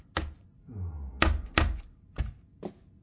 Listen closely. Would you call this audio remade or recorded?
recorded